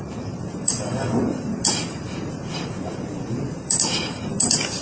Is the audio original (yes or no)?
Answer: no